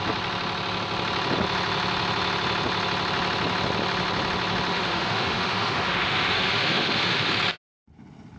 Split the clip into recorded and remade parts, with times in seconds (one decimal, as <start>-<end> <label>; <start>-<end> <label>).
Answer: 0.0-4.7 recorded; 4.7-7.3 remade; 7.3-8.4 recorded